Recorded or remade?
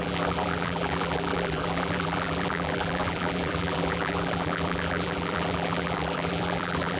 remade